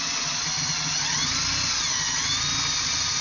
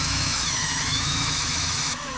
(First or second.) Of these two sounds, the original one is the first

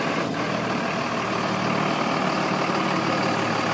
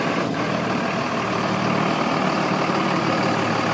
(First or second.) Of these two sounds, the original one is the first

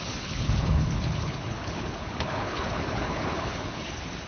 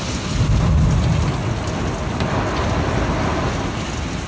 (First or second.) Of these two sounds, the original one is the second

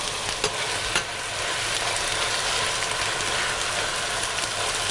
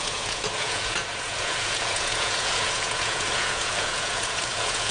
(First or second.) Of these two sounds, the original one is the first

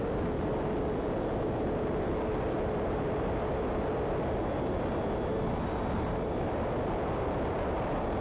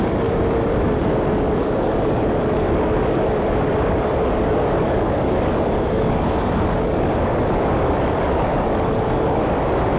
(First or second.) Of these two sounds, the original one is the first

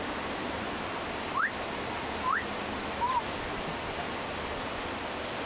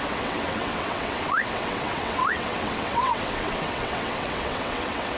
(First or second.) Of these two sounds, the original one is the first